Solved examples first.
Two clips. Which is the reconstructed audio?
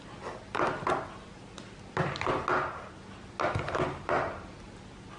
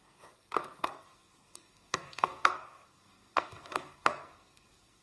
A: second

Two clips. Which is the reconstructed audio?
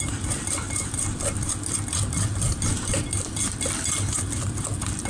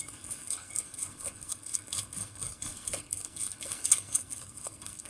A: second